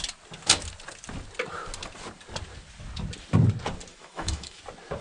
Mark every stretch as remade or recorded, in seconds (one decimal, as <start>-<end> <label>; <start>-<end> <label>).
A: 0.0-3.9 recorded; 3.9-4.6 remade; 4.6-5.0 recorded